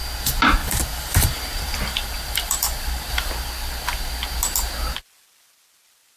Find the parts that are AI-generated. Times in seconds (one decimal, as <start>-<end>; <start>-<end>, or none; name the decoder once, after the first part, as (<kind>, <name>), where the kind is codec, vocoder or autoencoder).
0.6-3.3 (vocoder, BigVGAN v2)